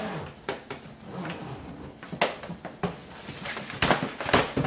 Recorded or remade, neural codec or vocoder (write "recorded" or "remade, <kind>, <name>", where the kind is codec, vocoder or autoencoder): recorded